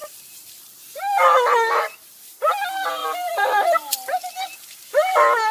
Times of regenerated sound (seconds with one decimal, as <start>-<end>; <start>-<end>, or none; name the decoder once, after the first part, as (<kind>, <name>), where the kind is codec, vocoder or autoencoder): 3.0-4.2 (vocoder, BigVGAN v2)